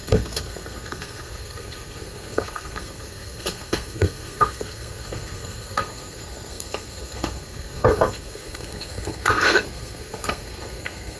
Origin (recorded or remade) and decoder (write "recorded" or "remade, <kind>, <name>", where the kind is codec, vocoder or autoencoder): remade, codec, SNAC